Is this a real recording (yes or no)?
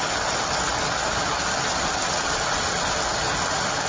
yes